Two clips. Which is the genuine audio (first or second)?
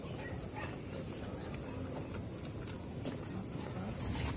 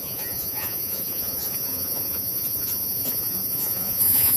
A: first